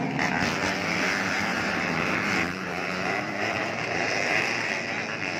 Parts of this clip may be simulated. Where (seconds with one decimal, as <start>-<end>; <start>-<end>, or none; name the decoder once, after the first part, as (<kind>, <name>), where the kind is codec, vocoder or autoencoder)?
1.5-4.7 (vocoder, BigVGAN v2)